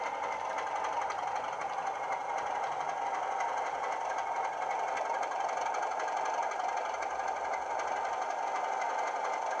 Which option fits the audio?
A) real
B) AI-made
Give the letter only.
A